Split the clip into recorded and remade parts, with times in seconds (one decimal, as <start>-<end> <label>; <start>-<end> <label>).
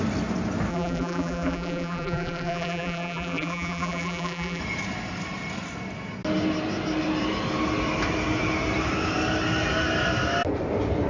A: 0.0-0.7 recorded; 0.7-4.6 remade; 4.6-11.1 recorded